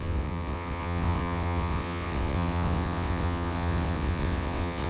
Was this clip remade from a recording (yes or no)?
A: yes